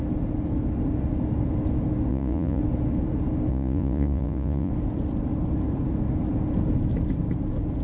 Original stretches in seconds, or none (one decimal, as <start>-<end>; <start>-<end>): 0.0-2.1; 2.6-3.5; 4.7-7.8